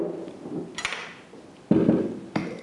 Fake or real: real